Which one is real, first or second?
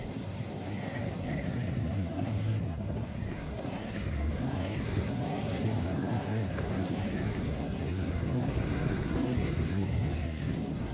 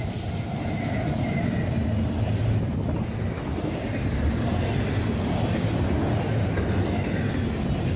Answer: second